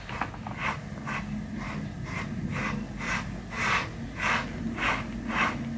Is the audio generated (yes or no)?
no